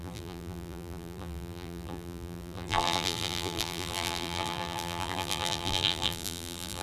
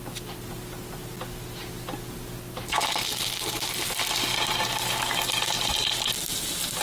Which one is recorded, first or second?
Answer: second